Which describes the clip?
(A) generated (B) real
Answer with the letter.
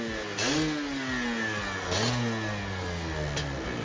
B